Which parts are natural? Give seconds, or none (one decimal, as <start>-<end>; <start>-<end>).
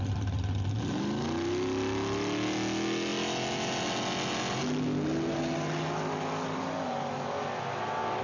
0.0-8.2